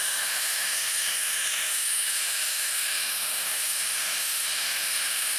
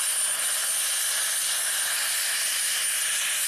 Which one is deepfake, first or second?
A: first